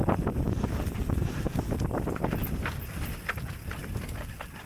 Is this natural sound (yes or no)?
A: yes